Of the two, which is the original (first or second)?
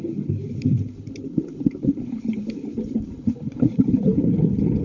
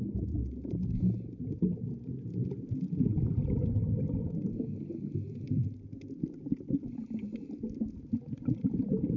second